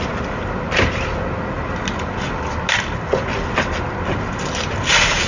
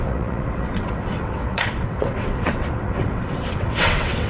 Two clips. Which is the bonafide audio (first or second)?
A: first